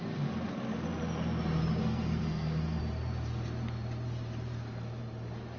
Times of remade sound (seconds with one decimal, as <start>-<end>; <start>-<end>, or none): 1.8-2.8